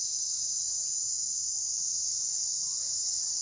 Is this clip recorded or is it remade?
recorded